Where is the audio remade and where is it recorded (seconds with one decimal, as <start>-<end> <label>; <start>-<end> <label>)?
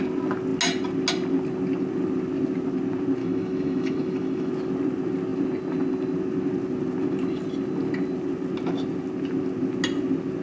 0.0-3.2 recorded; 3.2-4.5 remade; 4.5-10.4 recorded